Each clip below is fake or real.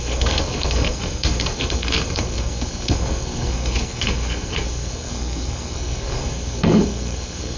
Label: fake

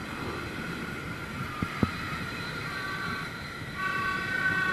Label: fake